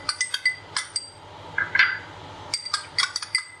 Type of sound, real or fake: real